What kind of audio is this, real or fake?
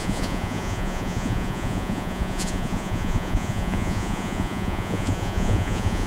fake